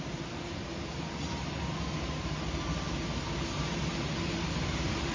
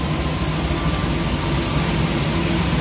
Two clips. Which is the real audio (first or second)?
second